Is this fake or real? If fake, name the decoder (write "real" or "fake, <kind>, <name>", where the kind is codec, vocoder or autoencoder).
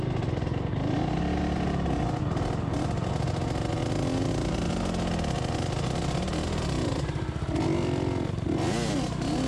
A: real